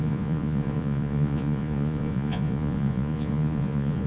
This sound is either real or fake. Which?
fake